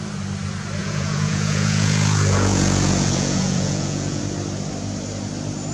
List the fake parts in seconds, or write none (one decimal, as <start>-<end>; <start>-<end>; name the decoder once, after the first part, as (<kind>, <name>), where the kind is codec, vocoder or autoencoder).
0.8-4.2 (vocoder, Vocos)